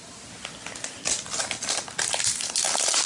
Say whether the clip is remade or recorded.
recorded